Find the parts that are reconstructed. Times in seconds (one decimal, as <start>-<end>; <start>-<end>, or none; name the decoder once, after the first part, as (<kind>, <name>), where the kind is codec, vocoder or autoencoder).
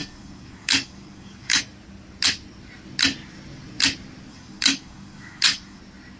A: 0.0-1.6 (codec, DAC); 4.3-5.8